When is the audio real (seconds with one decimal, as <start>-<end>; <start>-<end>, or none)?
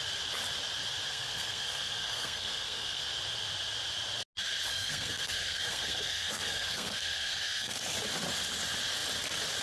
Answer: 0.0-1.1; 3.0-4.7; 7.8-9.6